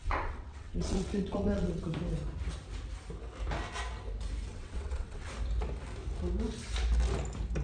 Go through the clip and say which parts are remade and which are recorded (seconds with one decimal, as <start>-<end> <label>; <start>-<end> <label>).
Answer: 0.0-1.9 remade; 1.9-4.5 recorded; 4.5-5.3 remade; 5.3-7.6 recorded